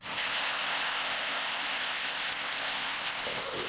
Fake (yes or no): yes